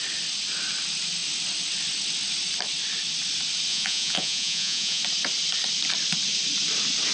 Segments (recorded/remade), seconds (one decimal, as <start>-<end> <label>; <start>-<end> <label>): 0.0-3.7 recorded; 3.7-5.0 remade; 5.0-7.1 recorded